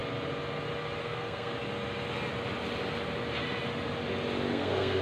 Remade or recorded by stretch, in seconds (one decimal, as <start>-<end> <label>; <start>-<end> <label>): 0.0-1.0 recorded; 1.0-1.5 remade; 1.5-4.5 recorded; 4.5-5.0 remade